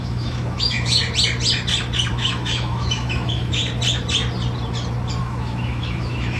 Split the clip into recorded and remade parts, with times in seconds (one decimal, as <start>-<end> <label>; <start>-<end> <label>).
0.0-1.0 remade; 1.0-2.1 recorded; 2.1-3.6 remade; 3.6-5.2 recorded; 5.2-6.4 remade